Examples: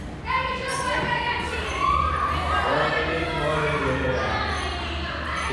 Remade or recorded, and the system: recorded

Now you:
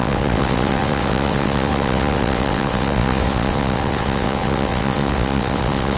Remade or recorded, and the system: remade, vocoder, WaveNeXt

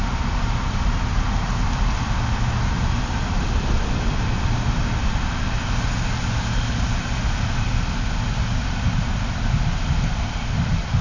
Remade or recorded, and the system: recorded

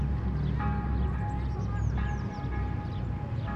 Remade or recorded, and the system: recorded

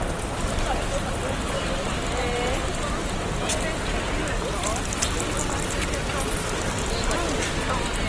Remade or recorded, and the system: recorded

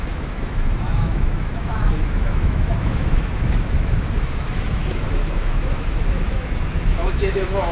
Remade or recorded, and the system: remade, autoencoder, DAC-VAE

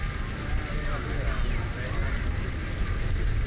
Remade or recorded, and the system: recorded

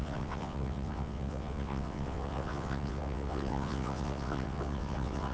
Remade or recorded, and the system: remade, vocoder, WaveNeXt